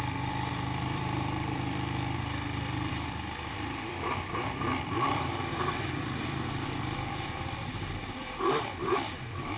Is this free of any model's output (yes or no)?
no